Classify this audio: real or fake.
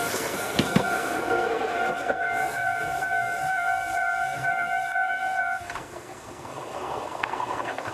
fake